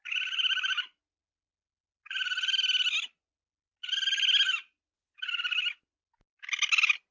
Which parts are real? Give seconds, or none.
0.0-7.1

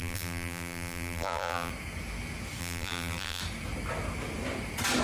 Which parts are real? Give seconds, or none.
1.7-2.6; 3.4-5.0

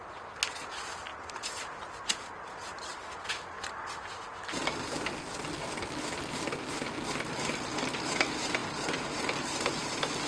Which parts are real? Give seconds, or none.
0.0-1.1; 2.3-10.3